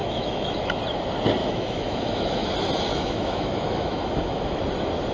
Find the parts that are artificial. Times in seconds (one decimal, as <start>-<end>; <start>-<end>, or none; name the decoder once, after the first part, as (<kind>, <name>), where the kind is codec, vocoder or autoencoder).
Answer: 0.0-0.8 (autoencoder, DAC-VAE); 1.4-2.5; 2.9-4.6